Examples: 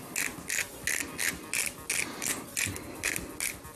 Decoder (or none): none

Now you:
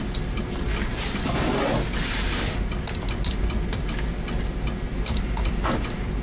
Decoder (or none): none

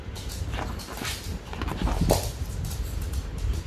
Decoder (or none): none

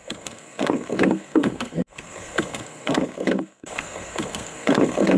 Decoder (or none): codec, SNAC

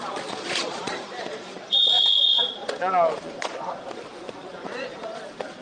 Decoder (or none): vocoder, Vocos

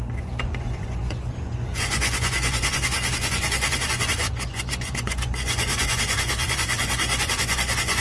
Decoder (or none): vocoder, Vocos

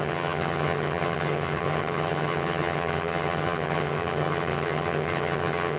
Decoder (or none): vocoder, HiFi-GAN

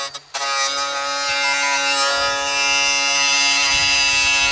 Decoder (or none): none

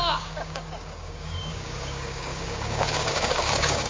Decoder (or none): codec, DAC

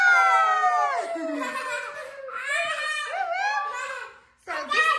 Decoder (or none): none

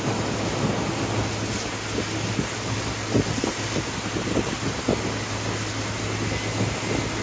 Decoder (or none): none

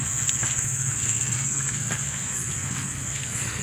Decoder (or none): codec, SNAC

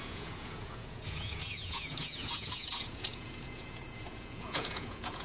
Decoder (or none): vocoder, Vocos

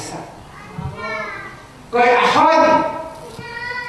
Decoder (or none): none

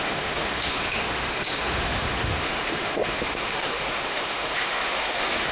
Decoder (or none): autoencoder, DAC-VAE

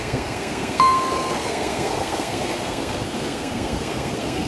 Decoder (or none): codec, SNAC